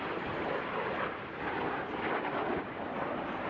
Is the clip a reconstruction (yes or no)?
no